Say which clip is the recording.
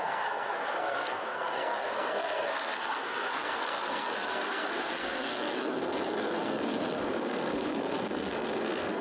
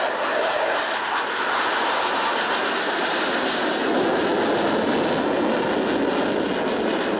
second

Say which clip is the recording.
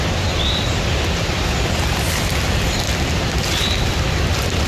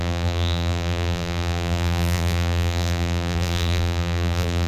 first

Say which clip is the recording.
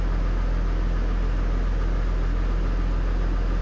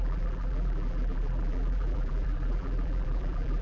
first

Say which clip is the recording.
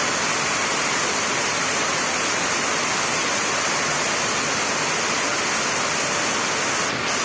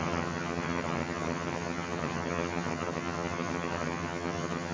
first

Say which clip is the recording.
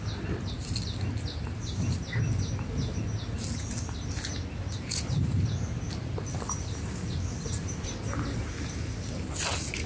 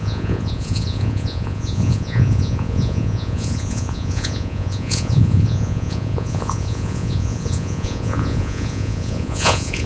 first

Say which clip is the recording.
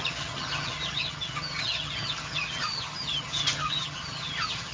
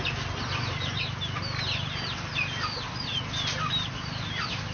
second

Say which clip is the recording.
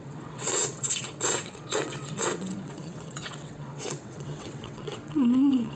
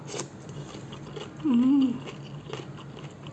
second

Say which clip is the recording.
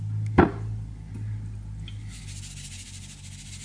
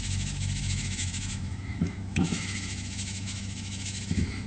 first